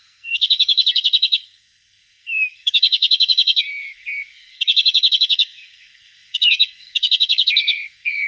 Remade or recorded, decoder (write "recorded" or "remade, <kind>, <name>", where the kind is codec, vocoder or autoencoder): remade, codec, SNAC